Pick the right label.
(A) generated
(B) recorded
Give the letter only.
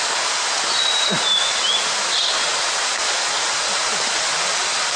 B